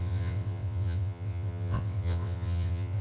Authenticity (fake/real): fake